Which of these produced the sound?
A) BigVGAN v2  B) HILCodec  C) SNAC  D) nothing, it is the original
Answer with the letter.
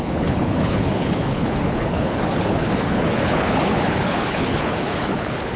B